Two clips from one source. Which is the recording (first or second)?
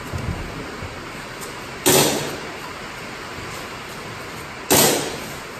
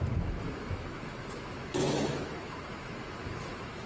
first